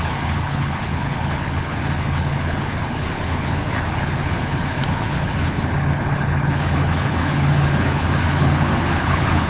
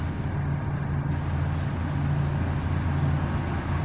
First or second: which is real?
second